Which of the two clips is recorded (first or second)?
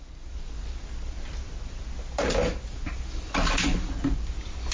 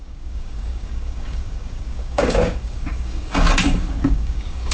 first